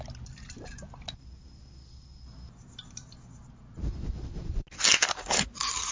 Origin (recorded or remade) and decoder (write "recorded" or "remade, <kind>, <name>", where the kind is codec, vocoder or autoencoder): recorded